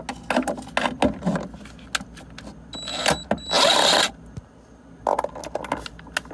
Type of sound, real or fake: real